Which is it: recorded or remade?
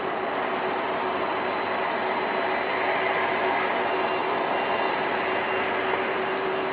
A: recorded